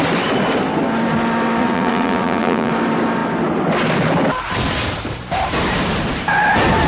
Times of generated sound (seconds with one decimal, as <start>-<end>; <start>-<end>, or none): 1.6-2.7